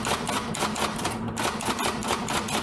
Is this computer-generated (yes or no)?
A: no